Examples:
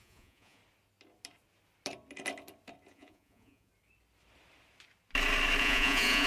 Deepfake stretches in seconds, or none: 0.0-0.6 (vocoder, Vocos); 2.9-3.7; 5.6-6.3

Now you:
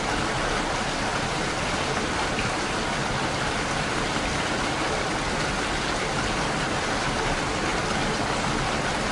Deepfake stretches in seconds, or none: 1.1-5.1 (vocoder, BigVGAN v2); 7.7-8.3

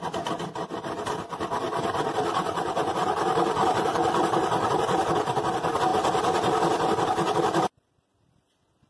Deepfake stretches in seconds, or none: 3.0-5.1 (vocoder, BigVGAN v2)

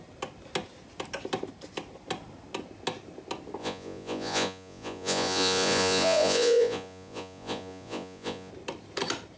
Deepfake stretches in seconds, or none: 3.6-8.5 (vocoder, Vocos)

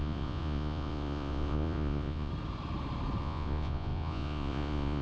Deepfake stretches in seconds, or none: 0.0-2.3 (vocoder, Vocos); 3.2-5.0